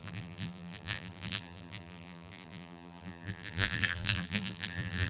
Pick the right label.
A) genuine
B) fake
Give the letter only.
B